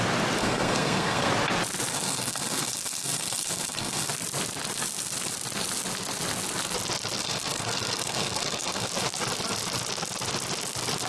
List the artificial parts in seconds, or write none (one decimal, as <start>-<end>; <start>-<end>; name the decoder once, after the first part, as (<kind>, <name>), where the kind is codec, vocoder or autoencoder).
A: 0.4-1.3 (codec, SNAC); 1.9-4.1; 7.2-8.9